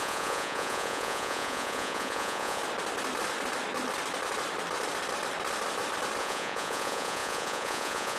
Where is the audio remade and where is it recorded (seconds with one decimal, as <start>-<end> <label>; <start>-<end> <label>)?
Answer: 0.0-2.6 remade; 2.6-6.2 recorded; 6.2-8.2 remade